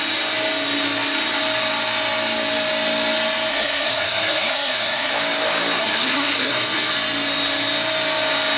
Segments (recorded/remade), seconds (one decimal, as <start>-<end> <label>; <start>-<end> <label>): 0.0-3.5 recorded; 3.5-5.1 remade; 5.1-5.8 recorded; 5.8-6.9 remade; 6.9-8.6 recorded